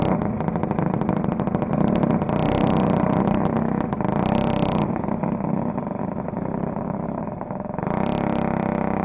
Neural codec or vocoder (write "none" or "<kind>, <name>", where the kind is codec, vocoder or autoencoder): none